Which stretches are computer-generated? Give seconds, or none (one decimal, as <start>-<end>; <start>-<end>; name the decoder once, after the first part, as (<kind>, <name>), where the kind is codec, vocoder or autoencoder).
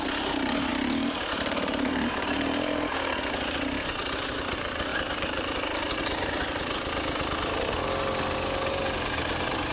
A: 0.7-3.2 (vocoder, BigVGAN v2); 4.9-6.0